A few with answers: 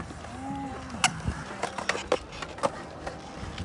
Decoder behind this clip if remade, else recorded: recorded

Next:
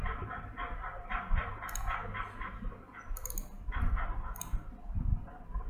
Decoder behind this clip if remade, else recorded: recorded